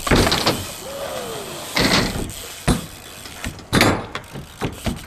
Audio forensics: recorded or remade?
recorded